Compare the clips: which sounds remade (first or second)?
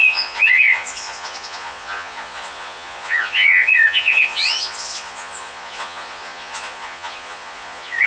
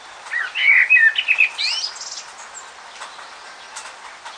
first